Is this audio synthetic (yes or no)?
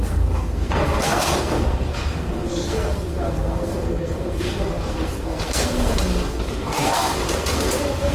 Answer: yes